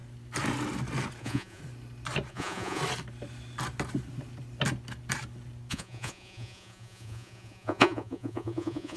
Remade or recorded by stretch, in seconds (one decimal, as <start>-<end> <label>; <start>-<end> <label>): 0.0-1.2 recorded; 1.2-1.6 remade; 1.6-2.3 recorded; 2.3-2.8 remade; 2.8-5.7 recorded; 5.7-9.0 remade